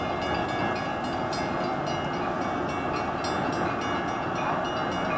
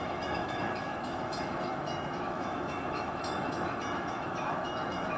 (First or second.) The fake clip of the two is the second